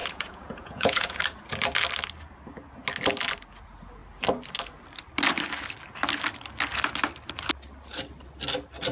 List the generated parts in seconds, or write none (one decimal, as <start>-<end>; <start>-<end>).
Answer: 0.0-1.2